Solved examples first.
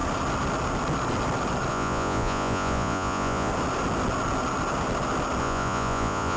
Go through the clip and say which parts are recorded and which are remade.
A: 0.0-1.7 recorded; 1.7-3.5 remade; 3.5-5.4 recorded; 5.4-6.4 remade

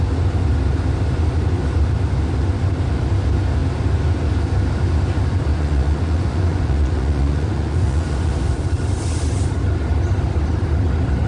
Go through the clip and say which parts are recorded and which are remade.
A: 0.0-5.5 recorded; 5.5-8.3 remade; 8.3-11.3 recorded

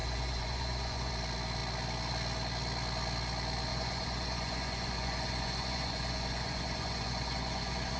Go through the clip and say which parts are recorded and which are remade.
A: 0.0-1.1 remade; 1.1-3.7 recorded; 3.7-8.0 remade

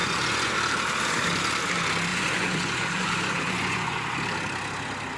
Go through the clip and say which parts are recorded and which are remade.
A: 0.0-0.5 remade; 0.5-2.1 recorded; 2.1-4.2 remade; 4.2-5.2 recorded

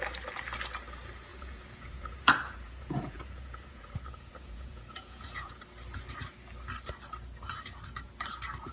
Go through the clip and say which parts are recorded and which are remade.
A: 0.0-1.3 recorded; 1.3-5.6 remade; 5.6-8.7 recorded

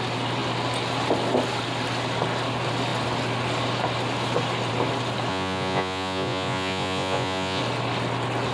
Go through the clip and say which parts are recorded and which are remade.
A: 0.0-5.3 recorded; 5.3-7.6 remade; 7.6-8.5 recorded

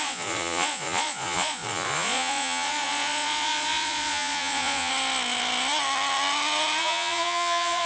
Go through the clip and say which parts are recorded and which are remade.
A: 0.0-4.9 remade; 4.9-6.8 recorded; 6.8-7.9 remade

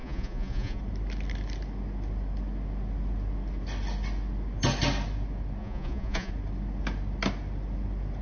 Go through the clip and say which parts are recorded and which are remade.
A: 0.0-0.8 remade; 0.8-5.6 recorded; 5.6-6.3 remade; 6.3-8.2 recorded